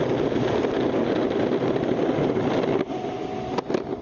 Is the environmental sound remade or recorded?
recorded